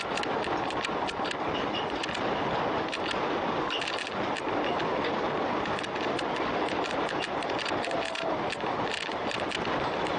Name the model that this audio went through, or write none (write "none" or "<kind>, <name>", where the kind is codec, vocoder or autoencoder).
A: none